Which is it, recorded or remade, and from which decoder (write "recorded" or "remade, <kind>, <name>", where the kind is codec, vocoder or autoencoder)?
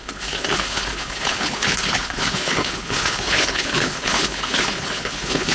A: remade, codec, HILCodec